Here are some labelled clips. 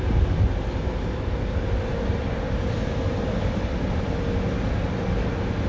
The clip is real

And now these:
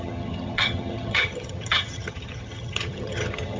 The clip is fake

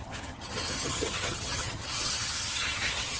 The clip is fake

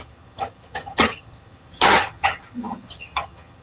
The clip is fake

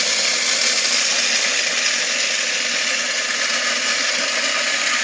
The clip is real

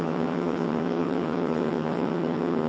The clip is fake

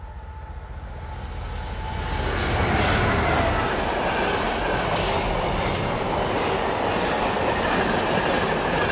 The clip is real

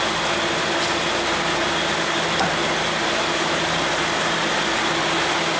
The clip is real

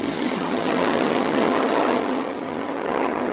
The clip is fake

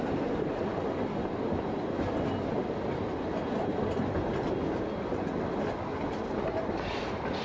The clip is real